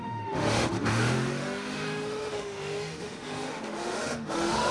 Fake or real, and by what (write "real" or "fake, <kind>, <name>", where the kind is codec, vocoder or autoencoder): fake, autoencoder, DAC-VAE